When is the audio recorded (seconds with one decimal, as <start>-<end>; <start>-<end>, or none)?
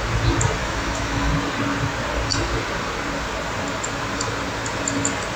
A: 0.0-0.6; 1.3-5.4